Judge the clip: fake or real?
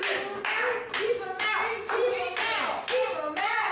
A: real